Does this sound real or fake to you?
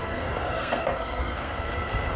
fake